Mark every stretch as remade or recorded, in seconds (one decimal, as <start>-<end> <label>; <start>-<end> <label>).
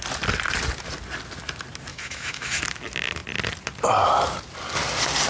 0.0-1.9 recorded; 1.9-2.6 remade; 2.6-5.3 recorded